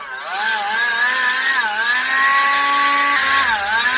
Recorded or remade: recorded